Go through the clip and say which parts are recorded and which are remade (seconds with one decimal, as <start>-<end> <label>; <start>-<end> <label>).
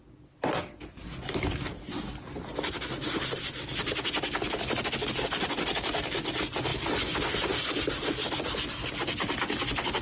0.0-10.0 recorded